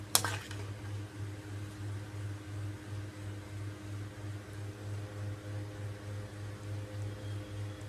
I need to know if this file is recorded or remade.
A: recorded